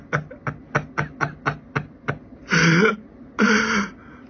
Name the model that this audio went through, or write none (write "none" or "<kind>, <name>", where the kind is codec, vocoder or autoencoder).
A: none